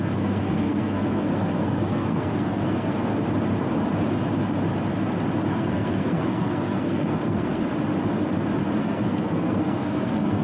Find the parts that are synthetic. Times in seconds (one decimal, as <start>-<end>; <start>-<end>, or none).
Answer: 0.0-3.1; 5.5-7.6; 8.8-10.4